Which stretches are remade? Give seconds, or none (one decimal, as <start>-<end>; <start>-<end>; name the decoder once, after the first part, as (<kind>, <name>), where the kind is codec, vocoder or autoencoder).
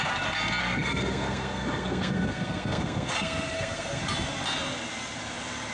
0.6-4.0 (codec, SNAC)